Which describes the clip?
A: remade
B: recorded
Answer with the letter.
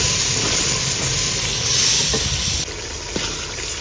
B